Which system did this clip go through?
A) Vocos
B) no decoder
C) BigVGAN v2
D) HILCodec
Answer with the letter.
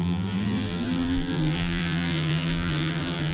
C